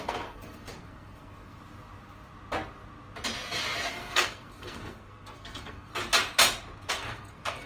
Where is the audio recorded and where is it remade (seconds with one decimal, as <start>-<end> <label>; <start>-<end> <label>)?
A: 0.0-1.6 remade; 1.6-3.9 recorded; 3.9-5.9 remade; 5.9-6.9 recorded; 6.9-7.7 remade